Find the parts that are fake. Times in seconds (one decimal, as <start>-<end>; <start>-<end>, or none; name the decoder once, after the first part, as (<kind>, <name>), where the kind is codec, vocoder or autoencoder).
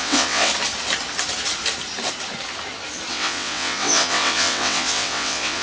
0.0-0.5 (vocoder, WaveNeXt); 3.1-5.6